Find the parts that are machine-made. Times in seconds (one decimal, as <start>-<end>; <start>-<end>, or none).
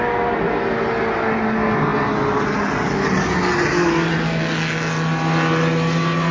none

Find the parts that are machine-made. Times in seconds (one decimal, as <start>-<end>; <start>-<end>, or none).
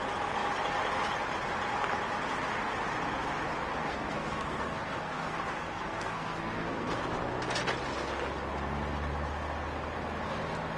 3.8-7.0